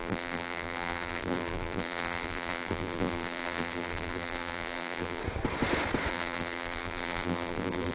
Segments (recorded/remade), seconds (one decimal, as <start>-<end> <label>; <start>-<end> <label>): 0.0-5.2 remade; 5.2-6.1 recorded; 6.1-7.9 remade